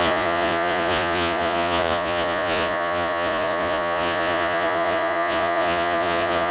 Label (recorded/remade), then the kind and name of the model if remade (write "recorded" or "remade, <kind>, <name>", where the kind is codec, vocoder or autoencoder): remade, vocoder, Vocos